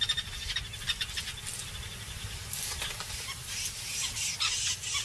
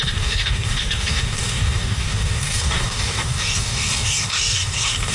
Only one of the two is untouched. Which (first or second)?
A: first